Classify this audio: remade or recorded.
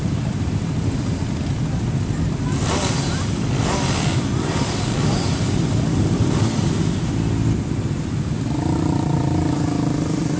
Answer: remade